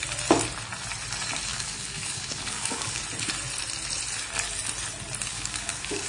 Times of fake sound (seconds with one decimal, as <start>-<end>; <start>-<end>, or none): 1.5-3.0; 5.3-6.1